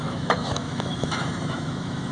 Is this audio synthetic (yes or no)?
yes